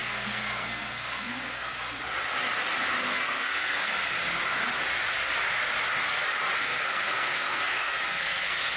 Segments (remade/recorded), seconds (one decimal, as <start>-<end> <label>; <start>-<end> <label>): 0.0-2.0 remade; 2.0-3.0 recorded; 3.0-3.9 remade; 3.9-6.6 recorded; 6.6-8.8 remade